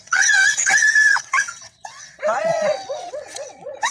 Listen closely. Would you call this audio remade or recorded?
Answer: remade